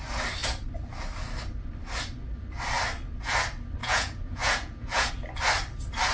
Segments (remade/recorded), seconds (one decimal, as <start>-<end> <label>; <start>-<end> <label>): 0.0-3.8 recorded; 3.8-5.1 remade; 5.1-6.1 recorded